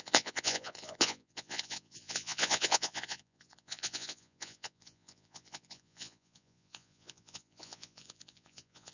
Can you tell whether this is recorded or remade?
remade